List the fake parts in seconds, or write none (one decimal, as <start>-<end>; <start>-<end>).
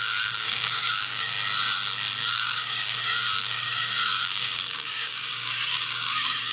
0.0-1.3; 2.2-6.5